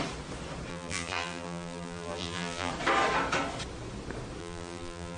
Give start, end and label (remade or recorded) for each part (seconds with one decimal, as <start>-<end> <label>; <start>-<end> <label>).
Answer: 0.0-0.7 recorded; 0.7-2.7 remade; 2.7-4.4 recorded; 4.4-5.2 remade